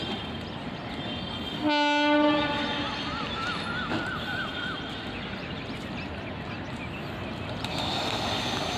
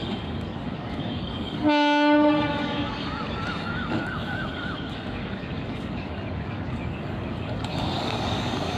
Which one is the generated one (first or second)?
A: second